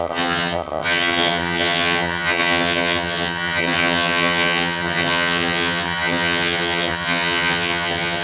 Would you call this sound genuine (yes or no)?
no